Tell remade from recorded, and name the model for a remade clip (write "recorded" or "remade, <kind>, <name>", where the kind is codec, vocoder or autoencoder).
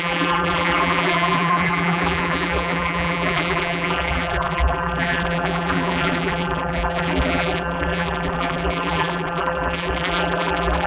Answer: remade, vocoder, BigVGAN v2